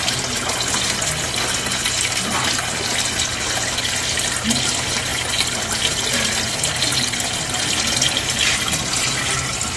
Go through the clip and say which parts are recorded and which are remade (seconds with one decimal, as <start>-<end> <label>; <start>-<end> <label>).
0.0-9.8 recorded